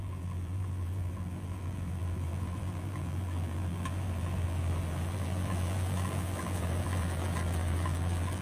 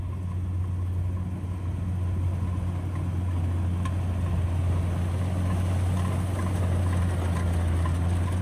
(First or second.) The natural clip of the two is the second